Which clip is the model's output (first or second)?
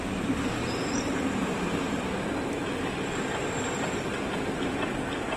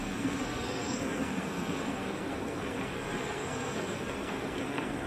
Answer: second